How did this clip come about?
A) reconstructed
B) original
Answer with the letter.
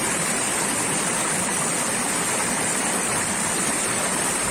A